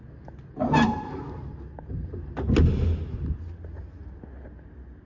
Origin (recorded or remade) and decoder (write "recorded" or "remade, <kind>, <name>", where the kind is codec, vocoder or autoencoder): recorded